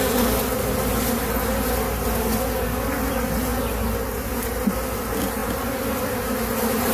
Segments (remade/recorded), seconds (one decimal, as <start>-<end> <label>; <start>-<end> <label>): 0.0-6.9 recorded

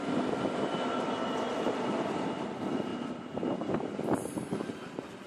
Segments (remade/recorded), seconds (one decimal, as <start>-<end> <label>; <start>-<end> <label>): 0.0-2.9 recorded; 2.9-4.7 remade; 4.7-5.3 recorded